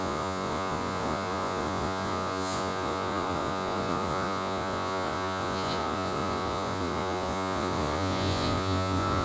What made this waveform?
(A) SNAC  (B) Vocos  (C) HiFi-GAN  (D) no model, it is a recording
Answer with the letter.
B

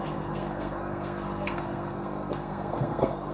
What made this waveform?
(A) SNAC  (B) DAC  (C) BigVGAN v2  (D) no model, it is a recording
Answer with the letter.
A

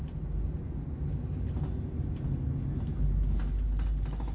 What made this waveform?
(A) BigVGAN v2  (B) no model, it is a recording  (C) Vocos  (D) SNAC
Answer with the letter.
B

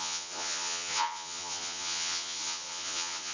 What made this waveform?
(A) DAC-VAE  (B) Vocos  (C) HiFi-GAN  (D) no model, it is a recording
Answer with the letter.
B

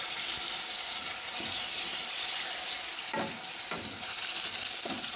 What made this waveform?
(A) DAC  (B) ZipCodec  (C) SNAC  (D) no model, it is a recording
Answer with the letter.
D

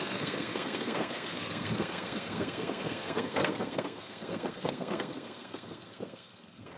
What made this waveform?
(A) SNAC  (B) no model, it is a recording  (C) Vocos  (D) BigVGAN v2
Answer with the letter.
A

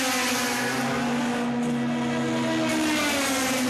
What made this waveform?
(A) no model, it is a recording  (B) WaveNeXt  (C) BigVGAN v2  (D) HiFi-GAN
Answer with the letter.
A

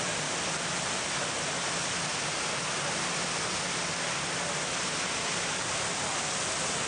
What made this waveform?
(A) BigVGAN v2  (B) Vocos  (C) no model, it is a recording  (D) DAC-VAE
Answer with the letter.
C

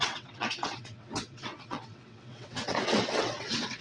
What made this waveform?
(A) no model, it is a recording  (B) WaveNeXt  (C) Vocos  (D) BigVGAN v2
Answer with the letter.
B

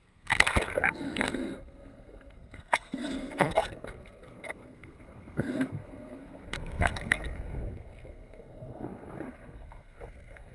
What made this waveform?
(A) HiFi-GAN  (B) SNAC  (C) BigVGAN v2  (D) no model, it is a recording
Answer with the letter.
B